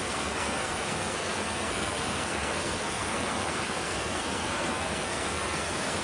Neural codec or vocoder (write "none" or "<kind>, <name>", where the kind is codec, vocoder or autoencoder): codec, SNAC